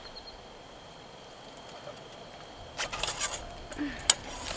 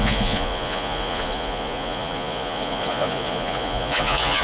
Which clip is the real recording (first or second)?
first